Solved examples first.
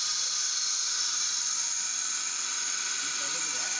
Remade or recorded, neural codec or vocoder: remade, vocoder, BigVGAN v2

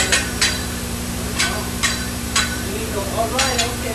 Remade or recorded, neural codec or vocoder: remade, vocoder, BigVGAN v2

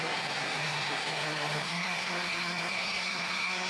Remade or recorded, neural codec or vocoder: remade, codec, SNAC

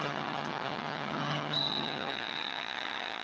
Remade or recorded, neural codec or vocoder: remade, vocoder, HiFi-GAN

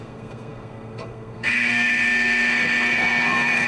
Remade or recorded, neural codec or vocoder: remade, codec, SNAC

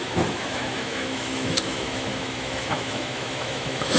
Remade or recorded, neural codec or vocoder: remade, autoencoder, DAC-VAE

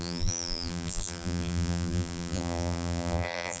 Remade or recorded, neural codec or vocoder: remade, vocoder, BigVGAN v2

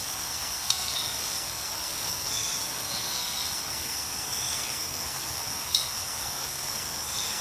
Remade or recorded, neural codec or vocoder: remade, codec, SNAC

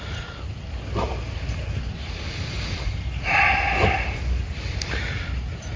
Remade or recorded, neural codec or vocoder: recorded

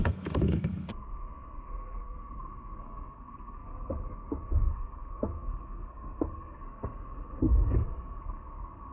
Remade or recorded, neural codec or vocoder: remade, codec, SNAC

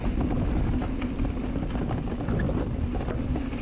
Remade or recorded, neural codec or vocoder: recorded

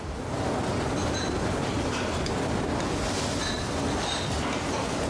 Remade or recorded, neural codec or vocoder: recorded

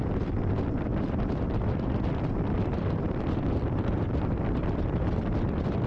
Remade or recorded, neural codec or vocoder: remade, vocoder, BigVGAN v2